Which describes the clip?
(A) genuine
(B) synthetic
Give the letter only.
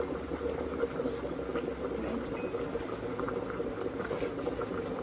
A